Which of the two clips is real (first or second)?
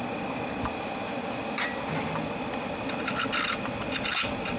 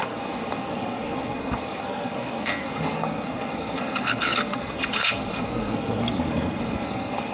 first